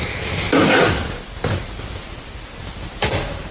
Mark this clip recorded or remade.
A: recorded